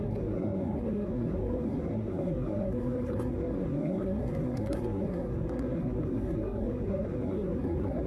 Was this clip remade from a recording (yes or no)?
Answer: yes